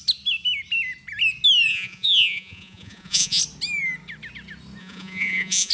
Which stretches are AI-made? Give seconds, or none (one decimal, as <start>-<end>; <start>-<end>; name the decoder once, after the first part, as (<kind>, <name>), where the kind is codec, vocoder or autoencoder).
1.7-3.4 (vocoder, Vocos); 4.8-5.7